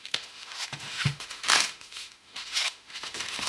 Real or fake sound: fake